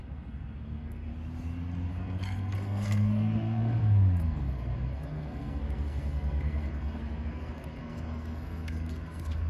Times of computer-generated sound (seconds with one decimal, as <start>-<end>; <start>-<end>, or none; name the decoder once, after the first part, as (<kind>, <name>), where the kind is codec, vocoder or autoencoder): 0.0-1.1 (codec, SNAC); 1.9-9.5